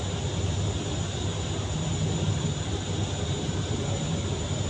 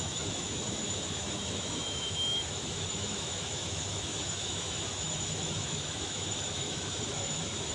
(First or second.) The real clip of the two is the first